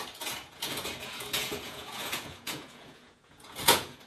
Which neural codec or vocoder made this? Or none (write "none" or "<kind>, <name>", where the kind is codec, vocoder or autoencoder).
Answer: vocoder, Vocos